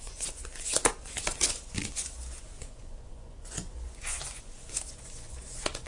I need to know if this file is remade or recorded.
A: remade